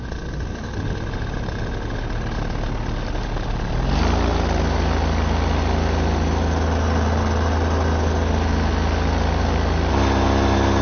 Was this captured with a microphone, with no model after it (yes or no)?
yes